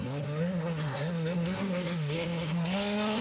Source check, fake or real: fake